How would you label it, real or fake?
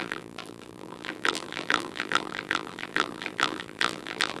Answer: fake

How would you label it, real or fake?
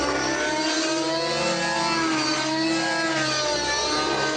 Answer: real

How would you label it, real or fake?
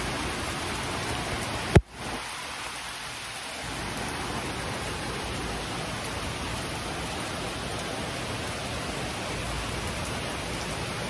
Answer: real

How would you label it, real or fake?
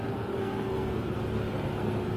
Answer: fake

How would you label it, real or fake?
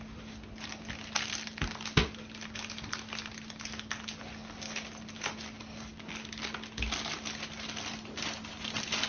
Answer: real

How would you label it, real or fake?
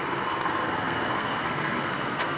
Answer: fake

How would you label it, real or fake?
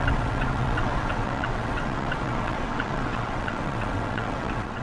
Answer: fake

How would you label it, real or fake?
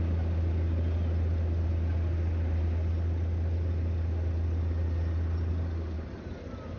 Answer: real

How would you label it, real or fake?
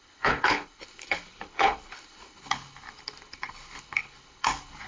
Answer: fake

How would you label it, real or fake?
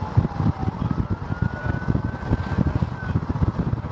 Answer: real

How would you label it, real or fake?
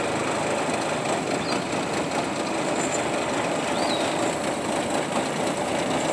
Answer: real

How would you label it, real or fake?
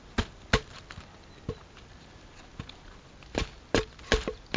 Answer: real